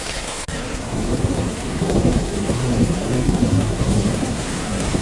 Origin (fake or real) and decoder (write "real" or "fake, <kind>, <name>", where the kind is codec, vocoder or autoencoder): fake, codec, SNAC